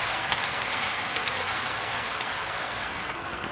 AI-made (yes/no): yes